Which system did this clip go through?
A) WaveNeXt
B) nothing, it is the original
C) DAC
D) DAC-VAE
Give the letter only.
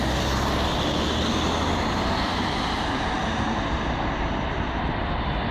B